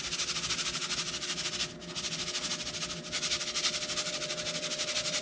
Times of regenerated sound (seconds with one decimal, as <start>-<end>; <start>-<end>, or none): none